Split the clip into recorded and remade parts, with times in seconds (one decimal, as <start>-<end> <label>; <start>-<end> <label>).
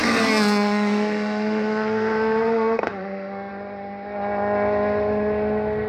0.0-3.5 remade; 3.5-5.9 recorded